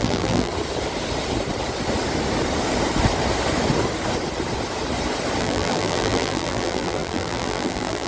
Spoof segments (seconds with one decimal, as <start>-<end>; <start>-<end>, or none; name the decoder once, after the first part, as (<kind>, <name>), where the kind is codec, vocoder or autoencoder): 0.0-0.5 (vocoder, BigVGAN v2); 5.4-8.1